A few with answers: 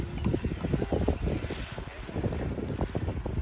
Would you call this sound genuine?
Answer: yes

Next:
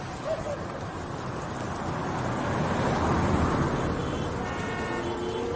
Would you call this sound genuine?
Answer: yes